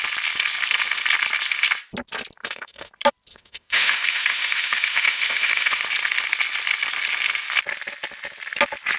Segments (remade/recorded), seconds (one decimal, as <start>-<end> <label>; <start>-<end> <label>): 0.0-2.4 recorded; 2.4-2.9 remade; 2.9-3.3 recorded; 3.3-5.8 remade; 5.8-9.0 recorded